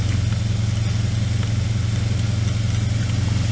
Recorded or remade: recorded